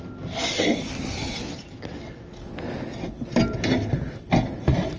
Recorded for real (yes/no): yes